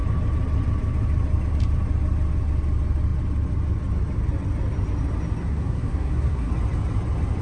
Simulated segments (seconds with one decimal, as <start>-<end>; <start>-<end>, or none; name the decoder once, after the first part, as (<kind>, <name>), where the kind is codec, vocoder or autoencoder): 5.5-6.5 (codec, SNAC)